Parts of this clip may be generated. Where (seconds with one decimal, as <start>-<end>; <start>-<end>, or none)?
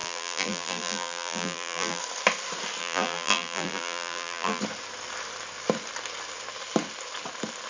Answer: 0.0-2.0; 2.8-4.6